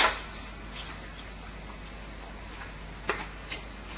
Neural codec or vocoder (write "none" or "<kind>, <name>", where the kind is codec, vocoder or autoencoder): none